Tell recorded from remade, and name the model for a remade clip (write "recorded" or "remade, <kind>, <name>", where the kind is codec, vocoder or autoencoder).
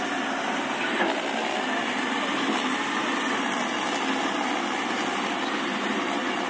recorded